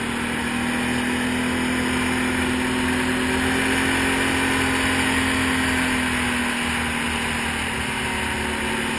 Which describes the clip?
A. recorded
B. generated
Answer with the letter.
A